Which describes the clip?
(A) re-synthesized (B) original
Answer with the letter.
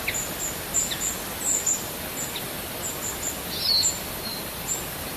B